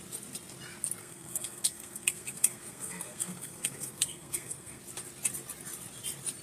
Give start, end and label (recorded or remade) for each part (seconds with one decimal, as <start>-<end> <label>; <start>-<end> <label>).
0.0-1.0 recorded; 1.0-4.8 remade; 4.8-6.4 recorded